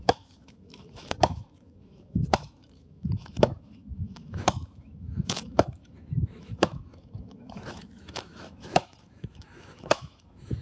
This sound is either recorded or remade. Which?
remade